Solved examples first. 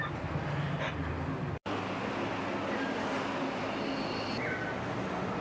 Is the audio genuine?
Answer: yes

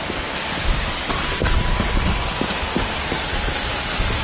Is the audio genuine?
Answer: yes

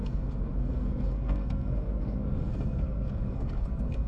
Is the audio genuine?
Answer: no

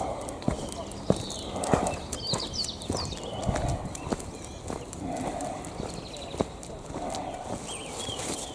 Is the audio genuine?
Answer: yes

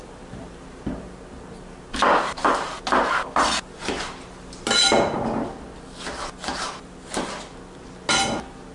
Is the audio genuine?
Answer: yes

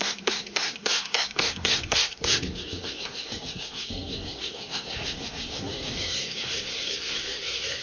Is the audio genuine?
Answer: no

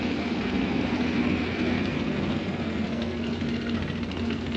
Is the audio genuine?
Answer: no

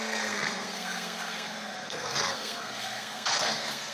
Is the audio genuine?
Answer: no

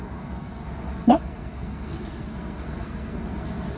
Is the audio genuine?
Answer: no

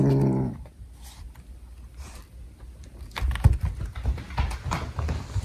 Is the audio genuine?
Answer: yes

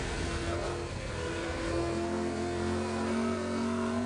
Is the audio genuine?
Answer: no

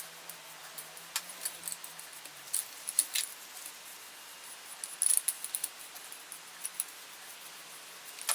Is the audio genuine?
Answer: yes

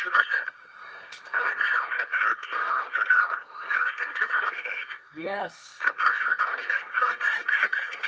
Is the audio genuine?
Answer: no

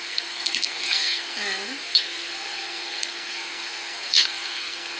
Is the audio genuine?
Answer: no